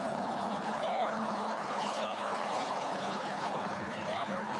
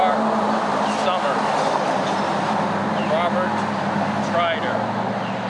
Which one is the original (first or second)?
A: second